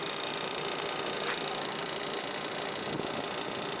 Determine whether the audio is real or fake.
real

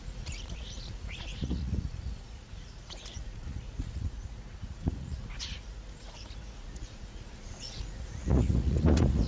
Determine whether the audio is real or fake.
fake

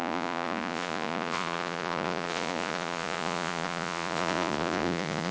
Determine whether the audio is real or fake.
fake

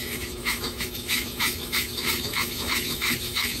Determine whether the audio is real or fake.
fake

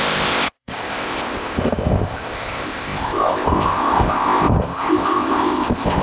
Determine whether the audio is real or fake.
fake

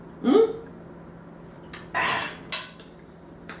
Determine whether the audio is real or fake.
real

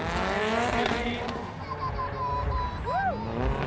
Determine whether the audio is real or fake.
real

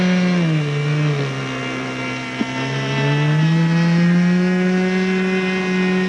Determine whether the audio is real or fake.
real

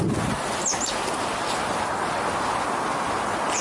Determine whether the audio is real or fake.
real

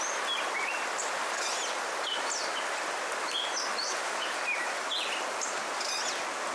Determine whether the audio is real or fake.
real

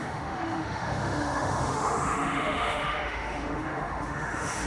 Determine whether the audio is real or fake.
fake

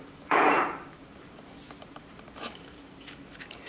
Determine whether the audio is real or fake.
fake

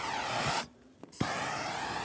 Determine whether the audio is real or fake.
real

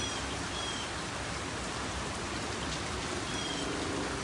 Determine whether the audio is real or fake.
real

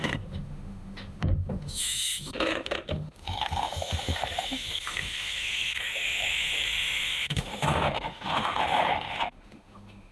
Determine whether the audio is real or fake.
fake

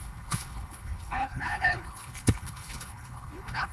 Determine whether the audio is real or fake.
fake